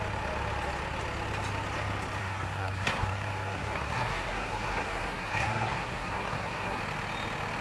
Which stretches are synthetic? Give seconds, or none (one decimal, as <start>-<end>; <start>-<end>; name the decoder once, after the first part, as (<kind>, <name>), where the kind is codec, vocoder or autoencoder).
2.2-6.8 (codec, SNAC)